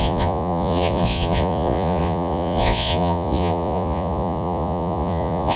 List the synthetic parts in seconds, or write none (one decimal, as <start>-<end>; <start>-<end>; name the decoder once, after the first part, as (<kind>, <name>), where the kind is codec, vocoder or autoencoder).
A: 0.0-5.6 (vocoder, Vocos)